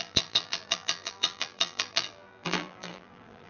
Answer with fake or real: fake